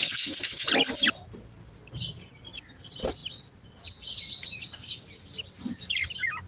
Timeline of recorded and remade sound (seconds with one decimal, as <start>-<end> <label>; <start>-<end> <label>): 0.0-0.7 remade; 0.7-6.5 recorded